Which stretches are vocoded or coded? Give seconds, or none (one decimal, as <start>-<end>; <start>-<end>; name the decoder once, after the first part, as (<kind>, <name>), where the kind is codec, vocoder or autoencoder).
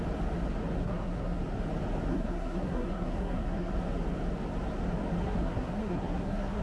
0.8-1.4 (codec, SNAC); 2.1-3.7; 5.2-6.6